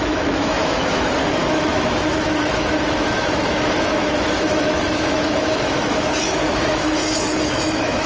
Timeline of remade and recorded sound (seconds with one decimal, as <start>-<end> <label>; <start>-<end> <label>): 0.0-8.1 remade